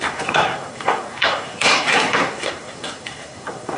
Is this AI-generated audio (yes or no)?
yes